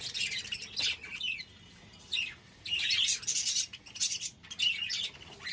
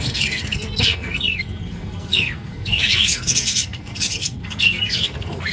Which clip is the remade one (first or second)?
second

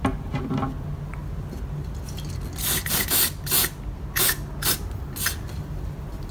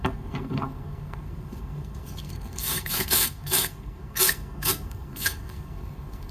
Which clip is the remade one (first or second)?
second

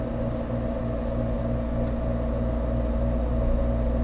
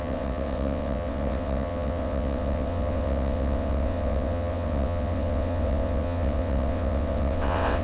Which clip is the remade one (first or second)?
second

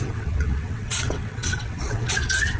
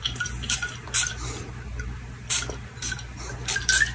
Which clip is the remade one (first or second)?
first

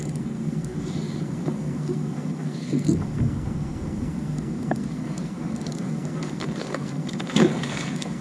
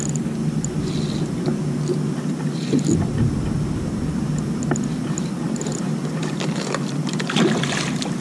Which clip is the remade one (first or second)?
first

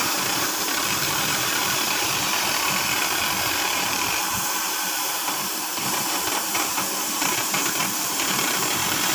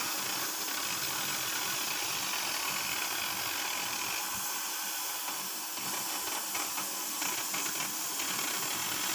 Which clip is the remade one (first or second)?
first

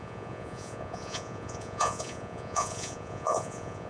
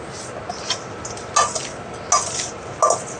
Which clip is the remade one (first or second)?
first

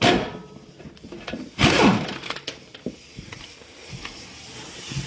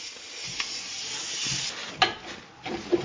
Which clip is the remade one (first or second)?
first